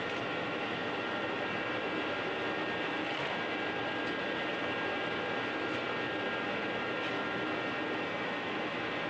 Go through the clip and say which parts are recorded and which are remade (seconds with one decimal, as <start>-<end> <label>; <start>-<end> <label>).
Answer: 0.0-9.1 recorded